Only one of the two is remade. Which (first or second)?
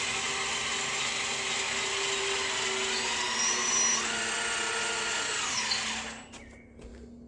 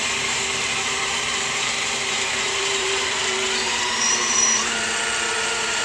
second